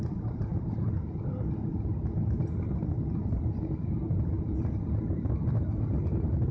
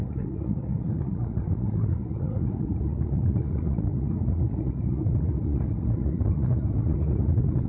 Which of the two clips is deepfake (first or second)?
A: second